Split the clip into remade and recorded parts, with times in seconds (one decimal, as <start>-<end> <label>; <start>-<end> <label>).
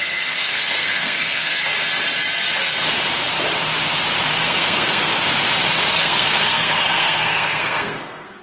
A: 0.0-1.7 remade; 1.7-4.4 recorded; 4.4-5.1 remade; 5.1-5.9 recorded; 5.9-8.4 remade